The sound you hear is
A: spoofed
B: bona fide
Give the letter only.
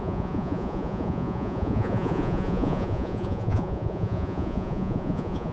A